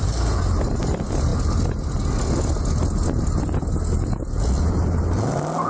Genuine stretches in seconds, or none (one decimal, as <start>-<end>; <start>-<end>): 0.0-5.7